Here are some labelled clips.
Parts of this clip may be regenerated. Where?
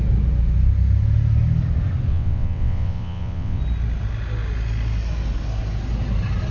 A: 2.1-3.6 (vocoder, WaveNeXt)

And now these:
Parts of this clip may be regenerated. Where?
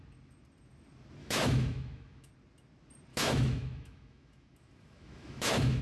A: 1.2-2.3 (autoencoder, DAC-VAE); 3.1-5.8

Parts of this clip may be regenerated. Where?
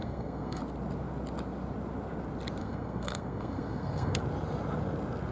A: 0.0-0.6 (codec, SNAC); 2.6-4.2